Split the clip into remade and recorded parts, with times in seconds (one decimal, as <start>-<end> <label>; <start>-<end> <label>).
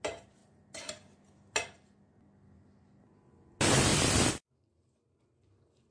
0.0-3.9 recorded; 3.9-5.2 remade; 5.2-5.9 recorded